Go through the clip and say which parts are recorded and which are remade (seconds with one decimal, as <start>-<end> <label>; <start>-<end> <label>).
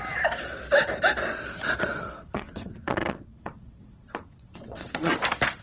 0.0-1.9 recorded; 1.9-5.1 remade; 5.1-5.6 recorded